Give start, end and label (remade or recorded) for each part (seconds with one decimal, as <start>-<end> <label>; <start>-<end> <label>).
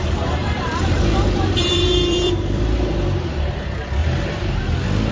0.0-0.4 recorded; 0.4-3.5 remade; 3.5-4.0 recorded; 4.0-4.6 remade; 4.6-5.1 recorded